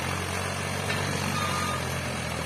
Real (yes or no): yes